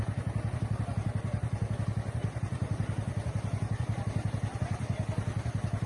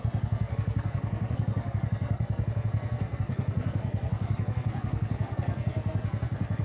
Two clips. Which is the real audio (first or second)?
first